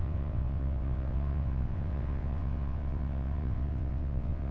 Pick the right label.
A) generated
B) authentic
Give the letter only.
A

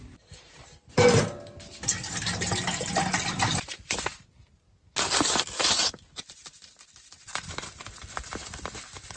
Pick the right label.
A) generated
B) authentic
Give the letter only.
B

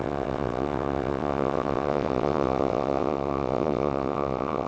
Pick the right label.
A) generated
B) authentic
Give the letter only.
A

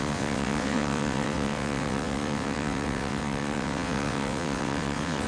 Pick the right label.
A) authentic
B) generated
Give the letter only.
B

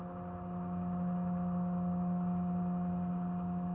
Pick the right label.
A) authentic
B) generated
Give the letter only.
A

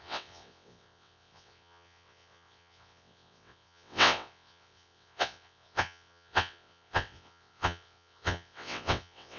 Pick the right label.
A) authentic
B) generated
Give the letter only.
B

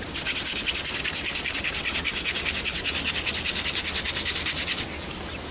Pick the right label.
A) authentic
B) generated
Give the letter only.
A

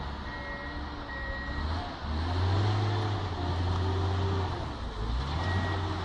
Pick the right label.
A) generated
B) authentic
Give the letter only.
B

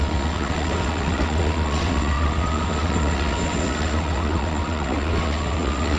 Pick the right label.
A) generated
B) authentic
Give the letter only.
A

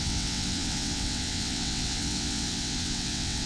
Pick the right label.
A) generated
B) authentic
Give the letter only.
A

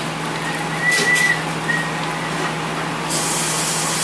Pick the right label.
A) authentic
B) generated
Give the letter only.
A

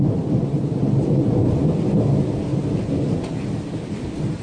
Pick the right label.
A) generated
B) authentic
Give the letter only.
B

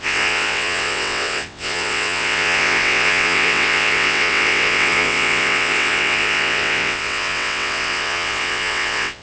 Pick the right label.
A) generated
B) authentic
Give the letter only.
A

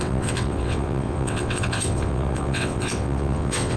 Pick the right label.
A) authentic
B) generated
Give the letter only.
B